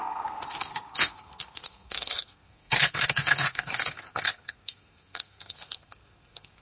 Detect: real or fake fake